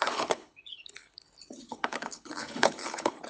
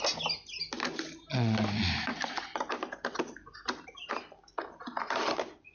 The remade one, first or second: first